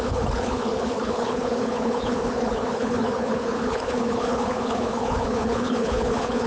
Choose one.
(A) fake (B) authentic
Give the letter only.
A